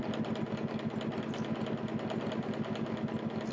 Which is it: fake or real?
real